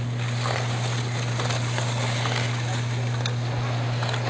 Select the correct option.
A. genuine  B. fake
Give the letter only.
A